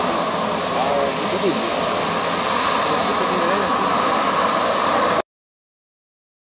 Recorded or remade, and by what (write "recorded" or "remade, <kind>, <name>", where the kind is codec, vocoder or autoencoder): recorded